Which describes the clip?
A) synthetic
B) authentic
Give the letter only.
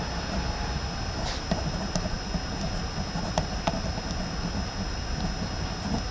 B